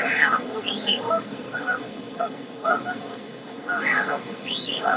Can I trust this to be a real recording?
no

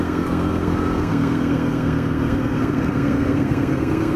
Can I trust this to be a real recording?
no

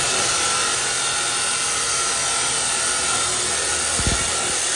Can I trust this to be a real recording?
yes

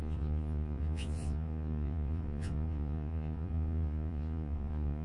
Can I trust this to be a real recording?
no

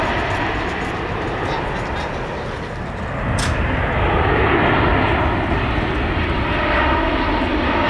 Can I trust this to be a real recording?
yes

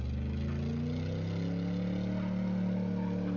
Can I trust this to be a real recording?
yes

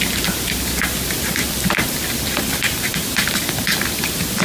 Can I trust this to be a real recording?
yes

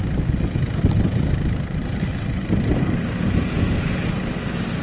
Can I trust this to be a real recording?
yes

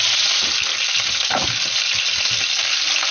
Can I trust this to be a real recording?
yes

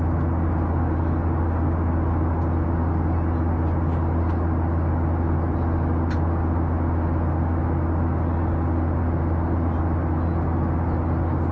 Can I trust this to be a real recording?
yes